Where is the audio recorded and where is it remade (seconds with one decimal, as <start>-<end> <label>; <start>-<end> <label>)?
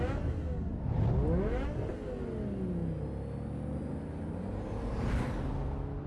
0.0-6.1 recorded